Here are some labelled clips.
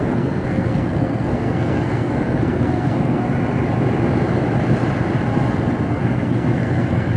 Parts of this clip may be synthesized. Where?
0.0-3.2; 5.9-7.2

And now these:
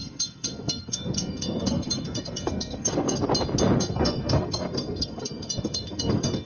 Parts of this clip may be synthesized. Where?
0.0-3.3; 3.8-6.5

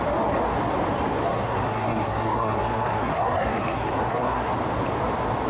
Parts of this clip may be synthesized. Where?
1.3-4.5

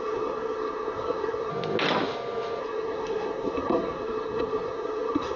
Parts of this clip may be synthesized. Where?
0.0-1.5; 2.6-5.4